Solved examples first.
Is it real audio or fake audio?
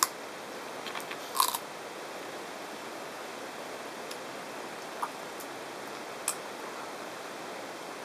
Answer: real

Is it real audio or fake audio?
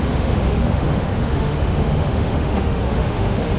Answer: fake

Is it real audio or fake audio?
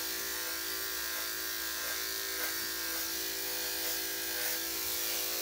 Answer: real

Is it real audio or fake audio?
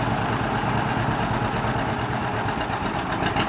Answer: real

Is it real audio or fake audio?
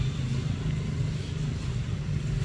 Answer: real